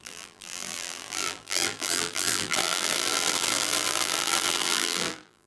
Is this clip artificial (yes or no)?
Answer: yes